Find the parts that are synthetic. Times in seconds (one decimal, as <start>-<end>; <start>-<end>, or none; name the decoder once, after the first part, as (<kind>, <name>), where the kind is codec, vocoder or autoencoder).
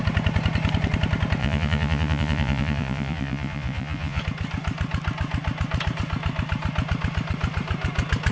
1.4-4.2 (vocoder, Vocos)